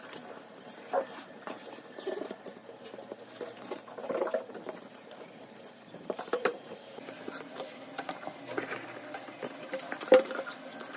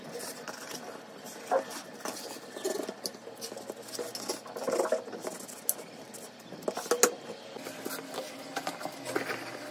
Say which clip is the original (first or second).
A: second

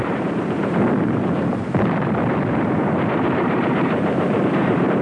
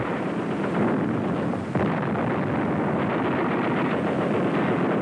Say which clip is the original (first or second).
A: second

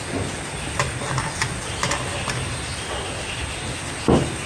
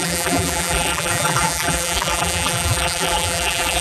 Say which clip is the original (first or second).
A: first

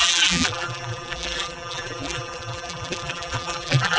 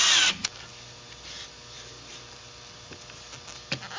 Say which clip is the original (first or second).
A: second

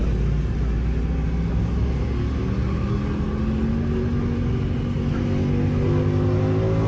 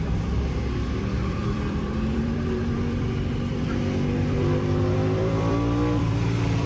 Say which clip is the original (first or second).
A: first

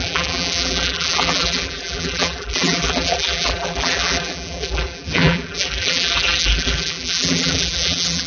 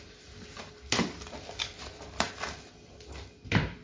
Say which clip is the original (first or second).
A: second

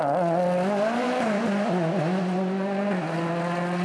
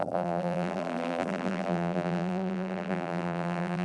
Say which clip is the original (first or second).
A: first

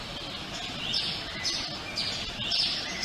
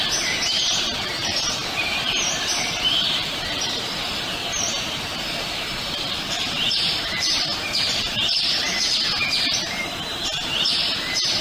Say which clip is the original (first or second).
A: first